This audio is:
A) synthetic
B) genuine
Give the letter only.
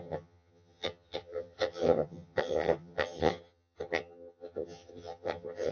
A